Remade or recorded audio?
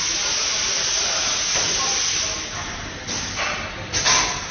recorded